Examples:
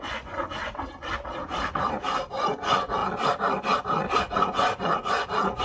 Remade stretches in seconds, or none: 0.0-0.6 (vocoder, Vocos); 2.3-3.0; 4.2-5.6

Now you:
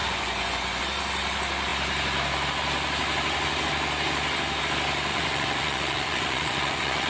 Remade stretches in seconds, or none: 0.0-0.8 (vocoder, Vocos); 5.1-7.1

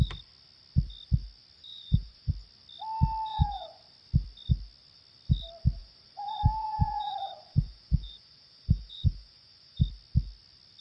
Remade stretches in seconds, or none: 1.7-2.3 (vocoder, Vocos); 3.3-3.8; 5.8-9.8